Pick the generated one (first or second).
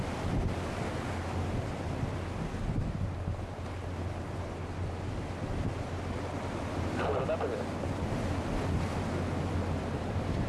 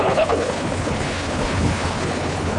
second